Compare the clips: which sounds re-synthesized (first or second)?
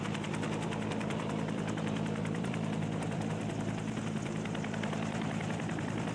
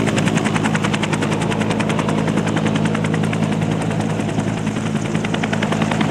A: first